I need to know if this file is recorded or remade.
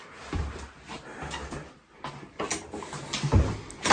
recorded